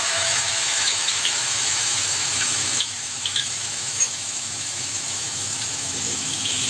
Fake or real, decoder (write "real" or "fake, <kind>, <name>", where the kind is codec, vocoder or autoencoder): fake, autoencoder, DAC-VAE